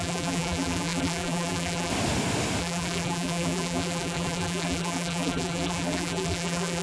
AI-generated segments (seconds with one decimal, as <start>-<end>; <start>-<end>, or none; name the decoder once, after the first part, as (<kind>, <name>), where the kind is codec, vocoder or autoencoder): 0.0-1.9 (vocoder, BigVGAN v2); 2.6-6.8